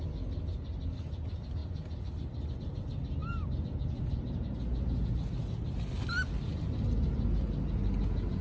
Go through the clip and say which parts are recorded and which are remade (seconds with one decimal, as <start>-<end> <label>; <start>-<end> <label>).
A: 0.0-8.4 recorded